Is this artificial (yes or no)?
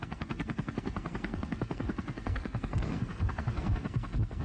yes